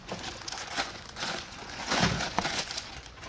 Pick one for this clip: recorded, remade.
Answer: remade